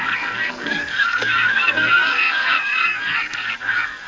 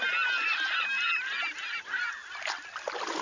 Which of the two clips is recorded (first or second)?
second